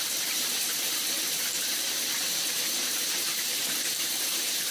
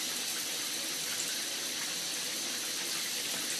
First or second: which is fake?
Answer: first